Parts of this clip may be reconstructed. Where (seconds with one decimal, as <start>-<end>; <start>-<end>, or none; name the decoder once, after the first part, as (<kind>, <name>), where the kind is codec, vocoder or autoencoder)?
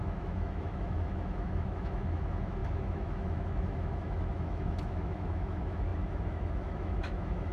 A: 0.0-7.5 (autoencoder, DAC-VAE)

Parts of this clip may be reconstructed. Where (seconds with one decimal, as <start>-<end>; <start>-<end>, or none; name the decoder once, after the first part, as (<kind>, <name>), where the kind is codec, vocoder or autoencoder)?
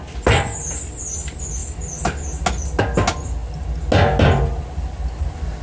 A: none